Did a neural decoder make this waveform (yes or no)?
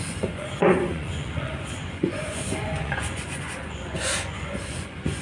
yes